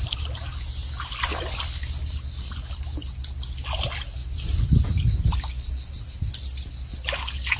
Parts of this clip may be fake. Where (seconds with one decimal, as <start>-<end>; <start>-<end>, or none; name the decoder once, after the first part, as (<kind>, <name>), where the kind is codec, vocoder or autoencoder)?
none